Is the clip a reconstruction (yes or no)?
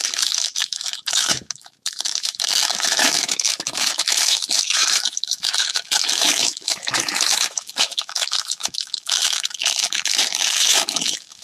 yes